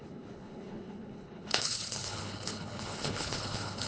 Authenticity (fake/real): fake